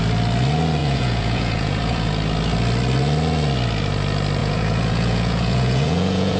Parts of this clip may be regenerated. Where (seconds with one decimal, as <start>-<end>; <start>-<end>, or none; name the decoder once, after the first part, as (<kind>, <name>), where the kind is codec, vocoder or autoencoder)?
0.8-2.1 (vocoder, Vocos); 4.4-6.4